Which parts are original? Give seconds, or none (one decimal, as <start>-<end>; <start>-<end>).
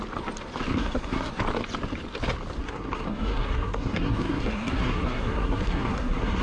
0.0-0.7; 1.3-2.6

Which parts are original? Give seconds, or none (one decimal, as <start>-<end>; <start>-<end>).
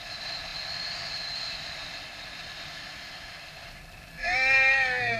0.0-4.1